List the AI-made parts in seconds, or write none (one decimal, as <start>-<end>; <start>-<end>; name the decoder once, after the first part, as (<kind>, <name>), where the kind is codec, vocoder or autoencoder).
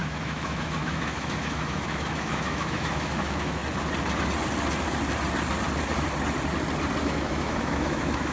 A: 0.0-3.6 (autoencoder, DAC-VAE); 7.0-8.3